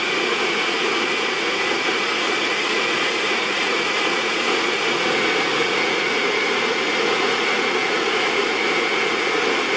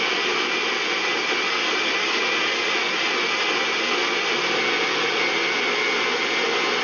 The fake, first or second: first